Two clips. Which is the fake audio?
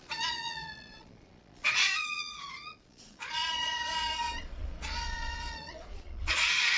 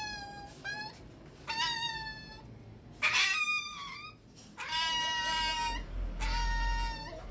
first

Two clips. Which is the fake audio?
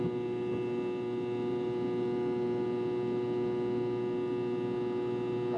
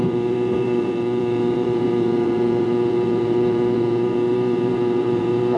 second